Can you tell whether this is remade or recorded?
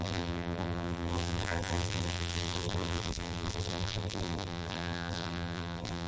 remade